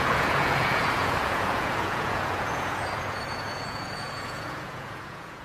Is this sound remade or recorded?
remade